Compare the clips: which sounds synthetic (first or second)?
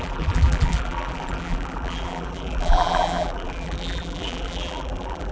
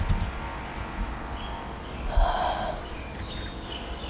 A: first